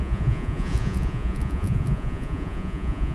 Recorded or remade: remade